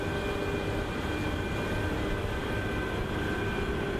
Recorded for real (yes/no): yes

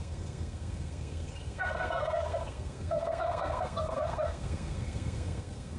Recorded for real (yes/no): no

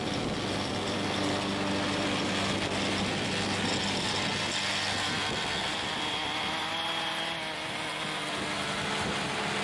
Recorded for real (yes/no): yes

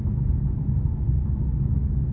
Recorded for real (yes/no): yes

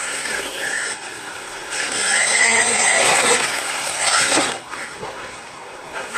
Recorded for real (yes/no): no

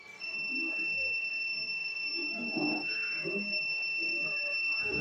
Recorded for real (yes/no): no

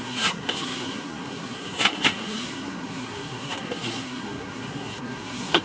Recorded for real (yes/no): no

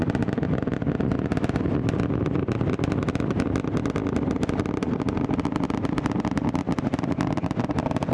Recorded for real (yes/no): yes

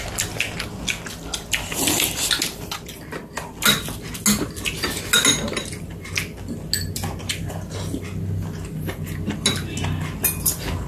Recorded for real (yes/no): yes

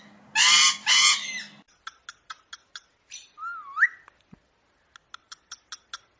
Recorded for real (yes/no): yes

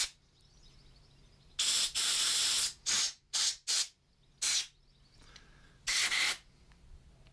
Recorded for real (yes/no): yes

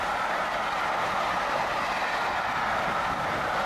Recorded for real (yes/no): yes